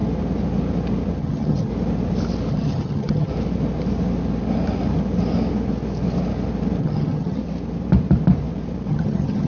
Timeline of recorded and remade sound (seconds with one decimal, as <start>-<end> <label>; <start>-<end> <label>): 0.0-1.2 recorded; 1.2-1.7 remade; 1.7-2.5 recorded; 2.5-3.3 remade; 3.3-6.8 recorded; 6.8-7.4 remade; 7.4-8.9 recorded; 8.9-9.5 remade